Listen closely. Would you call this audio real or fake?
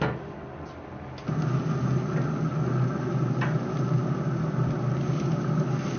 real